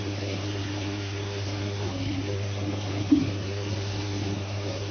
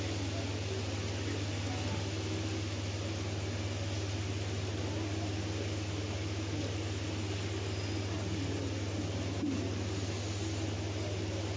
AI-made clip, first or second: first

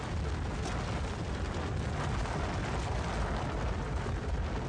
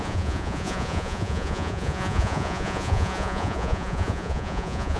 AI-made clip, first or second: second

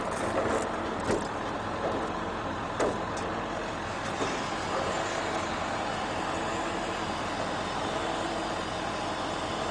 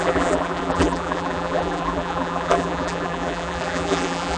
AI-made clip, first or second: second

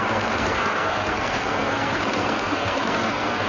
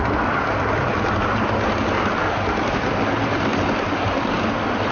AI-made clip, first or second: first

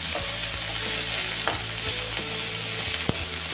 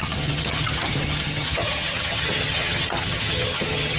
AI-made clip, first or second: second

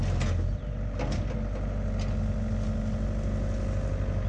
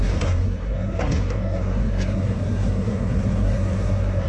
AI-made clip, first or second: second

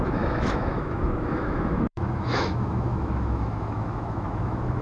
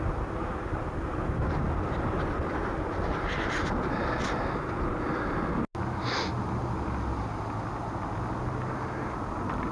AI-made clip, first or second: first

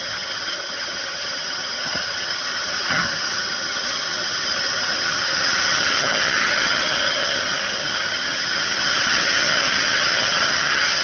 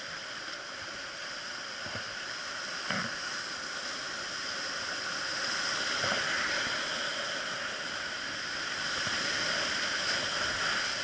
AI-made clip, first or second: first